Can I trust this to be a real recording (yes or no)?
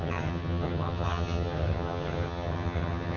no